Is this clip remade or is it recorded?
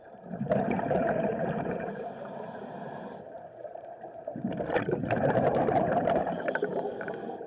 remade